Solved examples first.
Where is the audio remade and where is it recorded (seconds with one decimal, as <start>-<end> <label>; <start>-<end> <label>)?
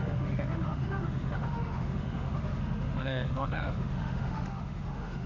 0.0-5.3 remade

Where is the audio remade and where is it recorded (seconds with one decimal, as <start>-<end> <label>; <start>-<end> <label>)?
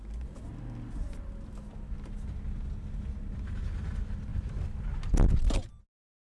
0.0-6.3 recorded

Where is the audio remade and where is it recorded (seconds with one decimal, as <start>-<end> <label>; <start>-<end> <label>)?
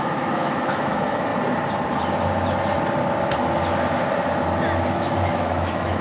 0.0-1.3 remade; 1.3-4.9 recorded; 4.9-6.0 remade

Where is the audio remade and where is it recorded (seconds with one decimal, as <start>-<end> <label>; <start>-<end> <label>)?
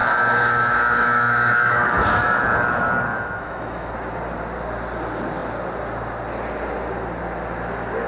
0.0-2.4 remade; 2.4-3.1 recorded; 3.1-3.9 remade; 3.9-8.1 recorded